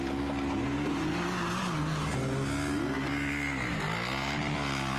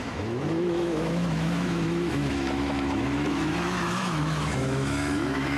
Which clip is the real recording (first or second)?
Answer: first